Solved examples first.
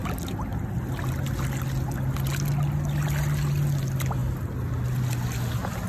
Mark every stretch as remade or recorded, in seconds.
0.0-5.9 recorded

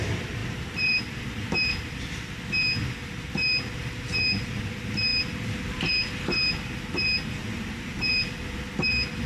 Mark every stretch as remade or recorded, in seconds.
0.0-0.4 recorded; 0.4-1.7 remade; 1.7-5.1 recorded; 5.1-5.9 remade; 5.9-9.3 recorded

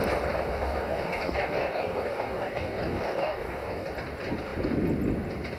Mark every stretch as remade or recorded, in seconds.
0.0-0.5 recorded; 0.5-3.9 remade; 3.9-5.6 recorded

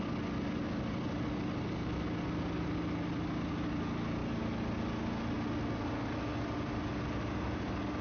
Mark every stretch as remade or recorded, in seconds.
0.0-8.0 recorded

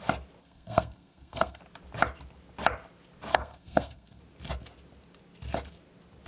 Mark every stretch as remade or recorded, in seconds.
0.0-0.4 recorded; 0.4-1.6 remade; 1.6-3.3 recorded; 3.3-4.2 remade; 4.2-6.3 recorded